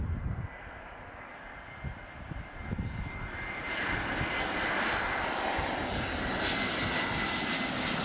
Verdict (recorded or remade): recorded